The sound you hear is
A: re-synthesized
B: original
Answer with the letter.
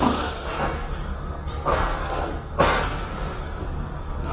A